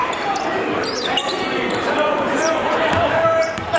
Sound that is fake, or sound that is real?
fake